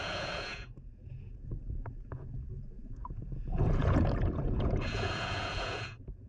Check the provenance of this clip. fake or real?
fake